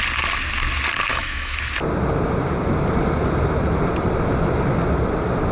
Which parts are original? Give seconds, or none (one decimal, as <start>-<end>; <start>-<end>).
0.0-1.1; 1.6-5.5

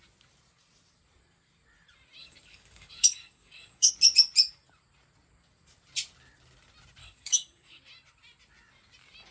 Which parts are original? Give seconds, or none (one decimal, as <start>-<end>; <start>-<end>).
0.0-2.2; 3.9-7.0; 7.8-9.3

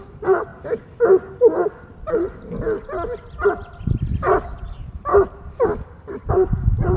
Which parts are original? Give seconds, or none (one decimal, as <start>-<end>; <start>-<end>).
0.5-4.6; 5.1-6.3

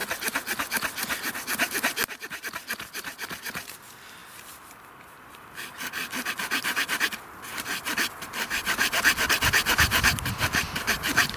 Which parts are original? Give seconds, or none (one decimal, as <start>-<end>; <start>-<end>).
0.0-2.4

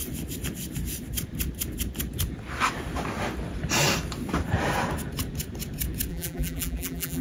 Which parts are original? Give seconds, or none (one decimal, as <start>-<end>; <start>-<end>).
0.0-6.1